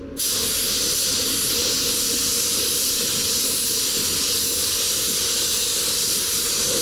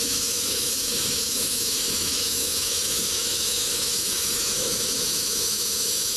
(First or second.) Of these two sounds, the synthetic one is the second